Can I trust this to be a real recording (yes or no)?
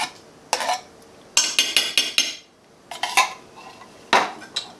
yes